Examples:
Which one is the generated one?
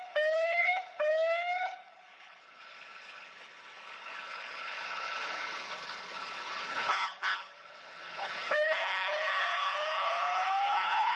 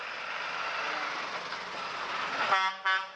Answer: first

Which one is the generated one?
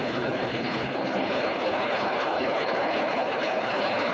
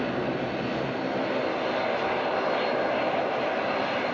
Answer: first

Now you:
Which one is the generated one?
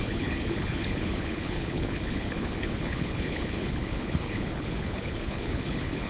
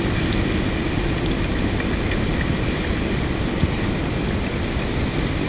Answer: first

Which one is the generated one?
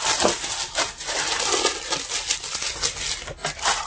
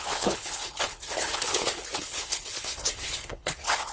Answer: second